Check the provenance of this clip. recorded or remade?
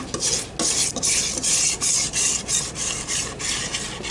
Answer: recorded